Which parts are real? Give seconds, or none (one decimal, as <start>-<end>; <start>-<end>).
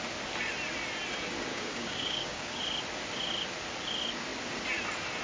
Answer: 0.0-1.5; 2.6-5.2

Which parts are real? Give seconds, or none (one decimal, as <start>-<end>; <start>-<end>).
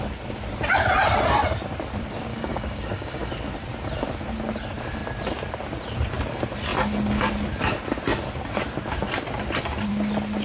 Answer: 0.0-2.3; 3.3-10.4